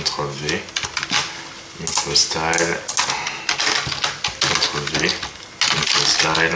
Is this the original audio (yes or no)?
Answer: yes